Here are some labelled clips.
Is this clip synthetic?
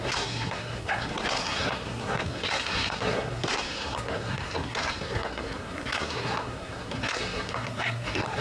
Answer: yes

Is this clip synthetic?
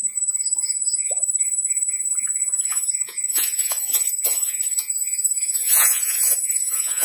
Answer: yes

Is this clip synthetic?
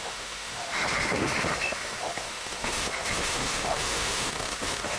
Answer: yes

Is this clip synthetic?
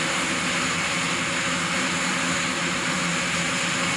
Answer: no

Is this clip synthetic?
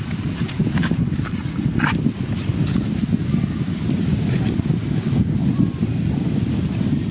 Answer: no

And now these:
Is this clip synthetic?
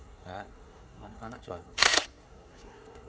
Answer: yes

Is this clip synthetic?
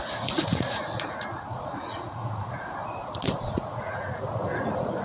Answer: yes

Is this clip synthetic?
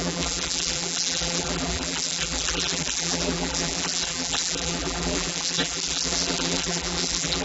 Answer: yes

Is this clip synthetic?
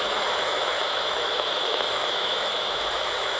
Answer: yes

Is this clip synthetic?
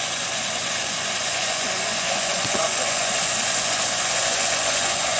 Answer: yes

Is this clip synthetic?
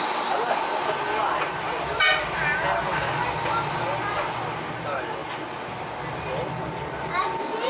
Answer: no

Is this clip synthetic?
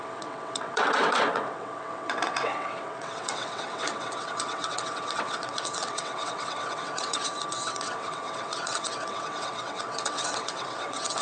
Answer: yes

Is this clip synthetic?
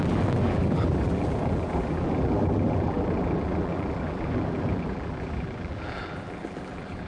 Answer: yes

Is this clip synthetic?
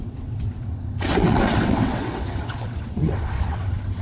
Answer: yes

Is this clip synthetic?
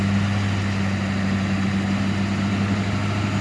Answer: no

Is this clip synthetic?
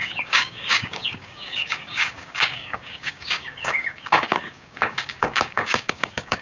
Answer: yes